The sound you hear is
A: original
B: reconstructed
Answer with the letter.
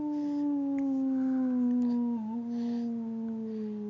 A